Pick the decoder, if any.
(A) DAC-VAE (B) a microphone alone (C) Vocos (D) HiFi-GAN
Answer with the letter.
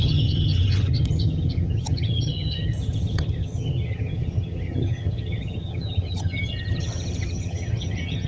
D